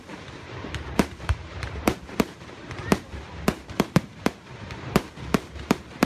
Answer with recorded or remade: remade